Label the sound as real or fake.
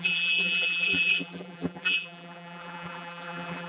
fake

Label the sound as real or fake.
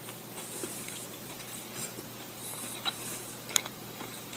fake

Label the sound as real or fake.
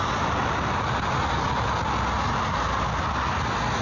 real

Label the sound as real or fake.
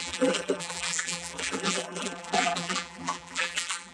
fake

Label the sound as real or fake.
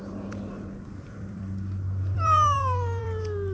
fake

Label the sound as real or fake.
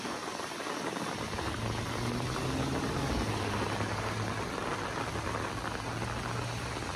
real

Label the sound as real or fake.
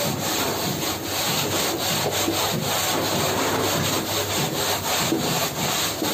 fake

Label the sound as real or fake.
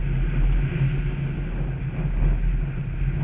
real